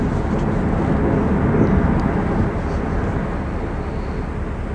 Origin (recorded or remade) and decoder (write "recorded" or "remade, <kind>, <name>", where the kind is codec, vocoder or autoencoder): recorded